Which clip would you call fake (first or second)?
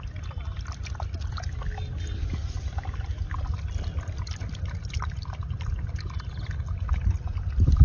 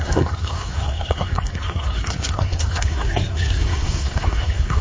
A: second